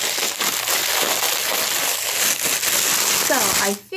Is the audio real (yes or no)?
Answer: yes